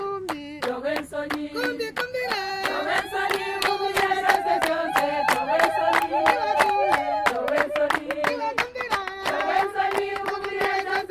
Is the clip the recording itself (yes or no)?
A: yes